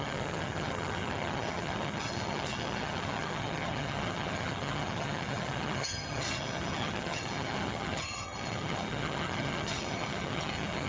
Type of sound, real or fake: fake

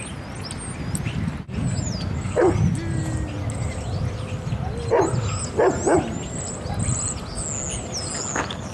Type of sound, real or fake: real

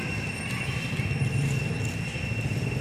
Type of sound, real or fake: real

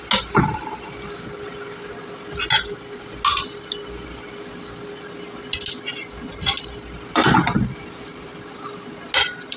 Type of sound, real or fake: real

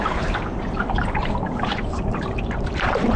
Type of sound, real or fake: fake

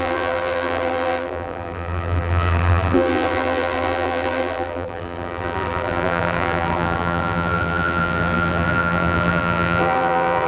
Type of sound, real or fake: fake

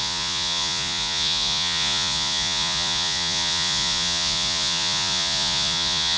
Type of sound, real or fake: fake